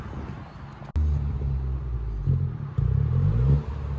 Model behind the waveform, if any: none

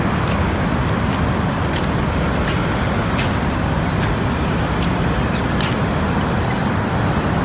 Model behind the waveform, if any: none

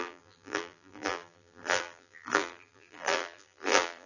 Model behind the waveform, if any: vocoder, BigVGAN v2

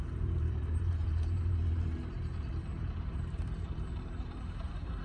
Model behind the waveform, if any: vocoder, BigVGAN v2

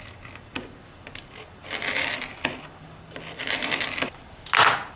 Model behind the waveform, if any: none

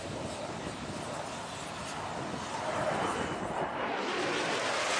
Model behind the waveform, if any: none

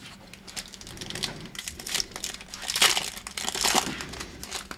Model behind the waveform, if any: none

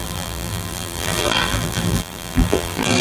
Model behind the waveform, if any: vocoder, BigVGAN v2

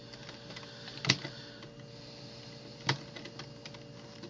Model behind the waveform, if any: none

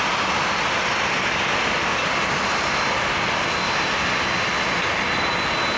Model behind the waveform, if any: none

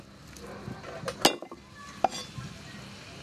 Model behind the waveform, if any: none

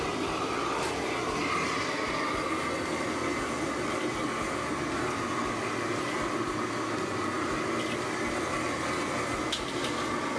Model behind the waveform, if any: none